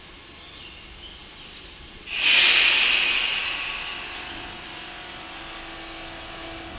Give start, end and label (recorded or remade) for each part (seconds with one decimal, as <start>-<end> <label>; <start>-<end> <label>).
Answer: 0.0-6.8 recorded